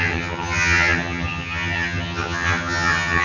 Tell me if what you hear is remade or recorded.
remade